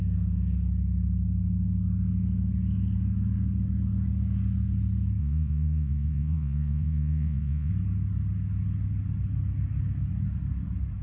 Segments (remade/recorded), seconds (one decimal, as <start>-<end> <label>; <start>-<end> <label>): 0.0-5.2 recorded; 5.2-7.7 remade; 7.7-11.0 recorded